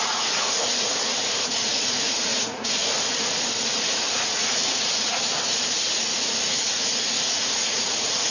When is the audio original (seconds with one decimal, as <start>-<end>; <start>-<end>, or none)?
5.2-5.7

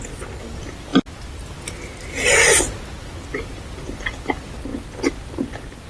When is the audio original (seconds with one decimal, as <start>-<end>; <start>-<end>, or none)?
0.9-3.0

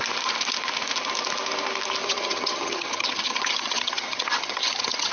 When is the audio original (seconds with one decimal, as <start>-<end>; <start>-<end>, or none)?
0.0-2.0

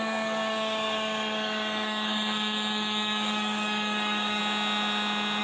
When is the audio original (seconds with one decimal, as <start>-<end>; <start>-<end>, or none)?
4.4-5.4

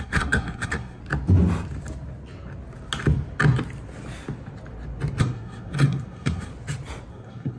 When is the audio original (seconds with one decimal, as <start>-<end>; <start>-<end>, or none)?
1.0-5.2; 6.5-7.1

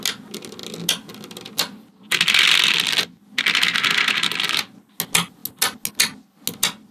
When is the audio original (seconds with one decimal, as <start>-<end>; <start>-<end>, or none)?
0.0-6.9

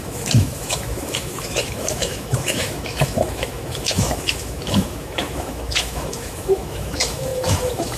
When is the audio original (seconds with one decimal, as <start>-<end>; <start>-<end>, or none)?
none

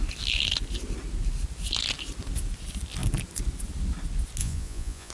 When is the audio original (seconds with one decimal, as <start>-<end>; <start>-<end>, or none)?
0.0-4.4